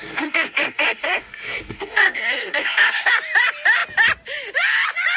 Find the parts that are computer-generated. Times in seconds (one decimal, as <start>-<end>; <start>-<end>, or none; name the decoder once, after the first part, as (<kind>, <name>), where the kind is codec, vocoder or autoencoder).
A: 0.0-3.1 (codec, SNAC)